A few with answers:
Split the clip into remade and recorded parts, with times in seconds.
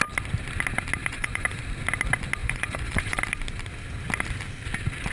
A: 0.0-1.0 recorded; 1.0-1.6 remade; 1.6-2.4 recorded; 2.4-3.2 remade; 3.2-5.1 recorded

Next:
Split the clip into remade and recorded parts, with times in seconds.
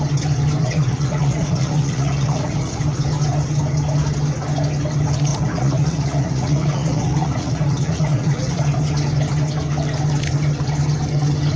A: 0.0-0.6 recorded; 0.6-2.8 remade; 2.8-5.3 recorded; 5.3-8.6 remade; 8.6-11.6 recorded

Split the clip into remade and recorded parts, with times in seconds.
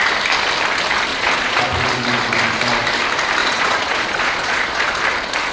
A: 0.0-1.1 recorded; 1.1-1.6 remade; 1.6-3.4 recorded; 3.4-5.0 remade; 5.0-5.5 recorded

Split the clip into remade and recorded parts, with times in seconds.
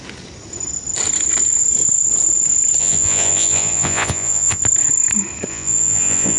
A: 0.0-2.8 recorded; 2.8-4.6 remade; 4.6-5.5 recorded; 5.5-6.4 remade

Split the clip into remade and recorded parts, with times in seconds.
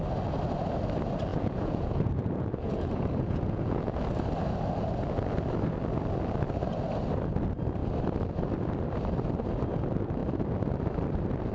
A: 0.0-1.3 recorded; 1.3-4.0 remade; 4.0-11.5 recorded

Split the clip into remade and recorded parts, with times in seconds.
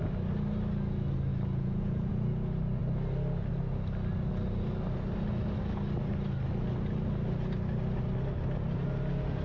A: 0.0-1.3 recorded; 1.3-2.1 remade; 2.1-9.4 recorded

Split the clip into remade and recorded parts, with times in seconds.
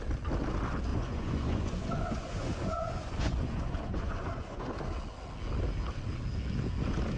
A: 0.0-0.9 recorded; 0.9-4.7 remade; 4.7-7.2 recorded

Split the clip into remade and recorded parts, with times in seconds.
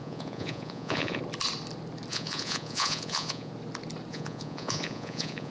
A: 0.0-1.2 remade; 1.2-2.1 recorded; 2.1-3.5 remade; 3.5-4.1 recorded; 4.1-5.5 remade